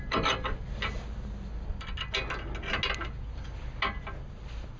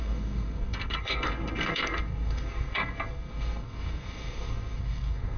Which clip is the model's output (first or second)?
second